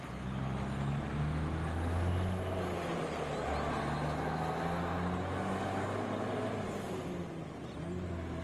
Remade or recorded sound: recorded